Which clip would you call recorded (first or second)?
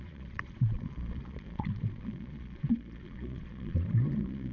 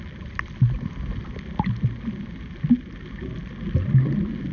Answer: second